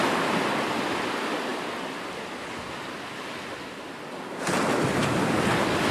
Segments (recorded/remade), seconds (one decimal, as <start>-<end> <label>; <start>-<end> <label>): 0.0-5.9 recorded